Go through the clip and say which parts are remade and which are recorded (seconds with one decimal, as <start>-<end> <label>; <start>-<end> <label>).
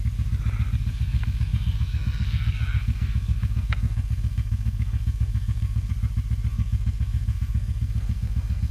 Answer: 0.0-0.9 recorded; 0.9-5.9 remade; 5.9-6.5 recorded; 6.5-8.7 remade